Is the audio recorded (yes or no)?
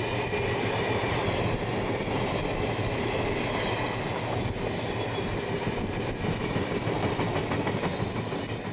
yes